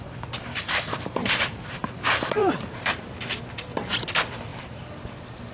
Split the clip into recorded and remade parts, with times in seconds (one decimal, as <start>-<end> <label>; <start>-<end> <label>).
0.0-0.5 recorded; 0.5-1.9 remade; 1.9-2.4 recorded; 2.4-3.2 remade; 3.2-5.5 recorded